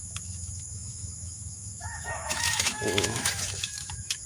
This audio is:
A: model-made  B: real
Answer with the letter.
A